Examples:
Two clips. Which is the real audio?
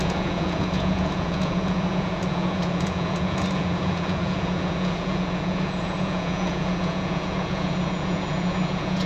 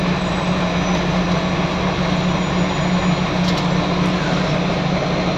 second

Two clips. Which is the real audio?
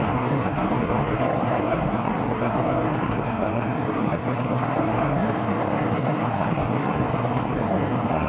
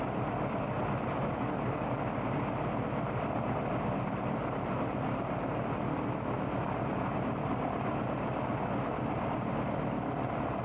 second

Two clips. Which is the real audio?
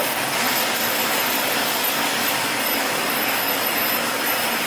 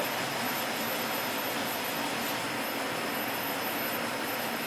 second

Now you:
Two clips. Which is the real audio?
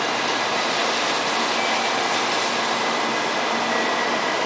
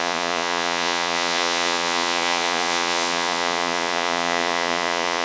first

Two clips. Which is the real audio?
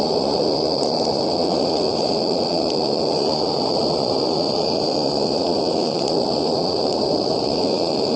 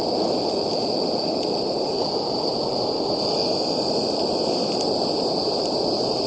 second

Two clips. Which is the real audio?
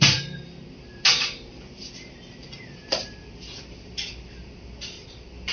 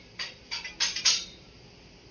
second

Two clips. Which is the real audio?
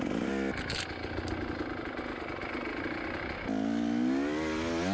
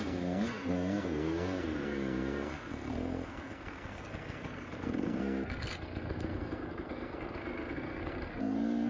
first